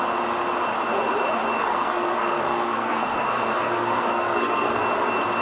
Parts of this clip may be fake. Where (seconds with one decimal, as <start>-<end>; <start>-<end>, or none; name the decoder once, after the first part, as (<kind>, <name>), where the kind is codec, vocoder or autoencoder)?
1.6-4.8 (codec, SNAC)